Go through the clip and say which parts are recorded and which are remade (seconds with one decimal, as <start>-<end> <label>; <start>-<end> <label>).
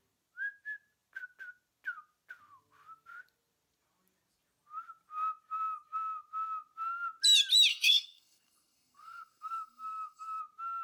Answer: 0.0-7.7 recorded; 7.7-10.4 remade; 10.4-10.8 recorded